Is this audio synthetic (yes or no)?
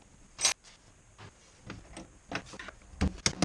no